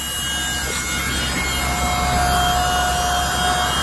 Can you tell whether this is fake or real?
real